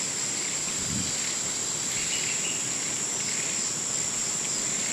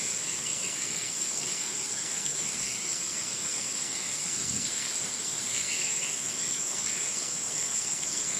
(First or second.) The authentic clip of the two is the first